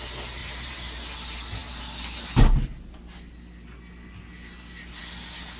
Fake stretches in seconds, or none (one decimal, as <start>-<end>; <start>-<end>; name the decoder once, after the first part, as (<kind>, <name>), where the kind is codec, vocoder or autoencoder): 0.4-0.9 (vocoder, BigVGAN v2)